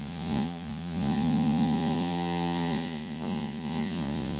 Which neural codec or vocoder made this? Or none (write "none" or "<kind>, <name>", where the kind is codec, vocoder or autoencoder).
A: vocoder, Vocos